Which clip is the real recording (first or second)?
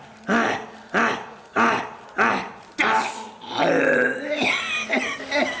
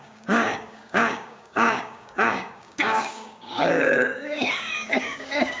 first